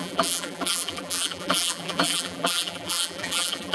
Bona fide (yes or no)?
no